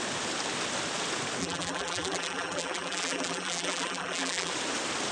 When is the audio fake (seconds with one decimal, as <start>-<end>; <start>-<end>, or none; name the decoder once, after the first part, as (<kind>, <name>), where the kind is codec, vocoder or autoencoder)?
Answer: 1.4-4.5 (vocoder, BigVGAN v2)